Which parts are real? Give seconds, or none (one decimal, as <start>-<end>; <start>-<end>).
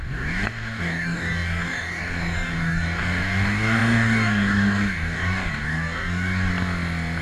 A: 6.5-7.2